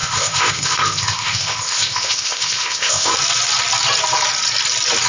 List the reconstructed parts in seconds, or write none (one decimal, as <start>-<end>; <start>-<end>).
0.0-3.1